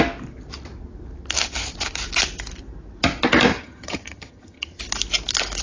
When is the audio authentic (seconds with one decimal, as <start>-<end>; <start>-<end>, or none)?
0.0-3.5; 4.8-5.6